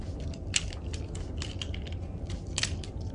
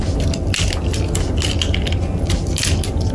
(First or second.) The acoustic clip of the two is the second